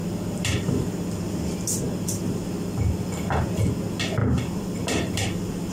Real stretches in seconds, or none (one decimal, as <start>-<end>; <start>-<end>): 3.4-4.2